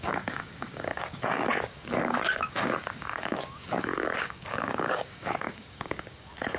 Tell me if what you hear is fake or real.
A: fake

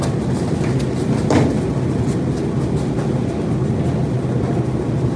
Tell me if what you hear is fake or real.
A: real